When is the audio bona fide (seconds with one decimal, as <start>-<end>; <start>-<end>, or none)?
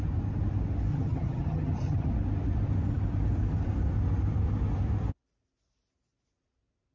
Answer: 0.0-0.9; 2.1-6.9